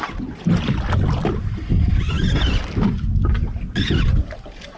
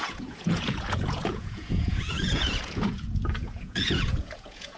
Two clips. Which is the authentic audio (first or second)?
first